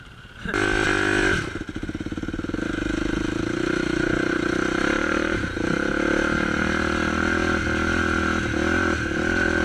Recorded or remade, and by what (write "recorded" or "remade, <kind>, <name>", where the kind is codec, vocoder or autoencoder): recorded